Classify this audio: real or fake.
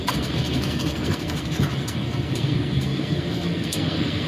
fake